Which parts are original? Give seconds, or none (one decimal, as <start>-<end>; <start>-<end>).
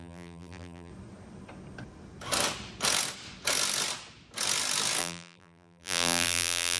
0.9-5.0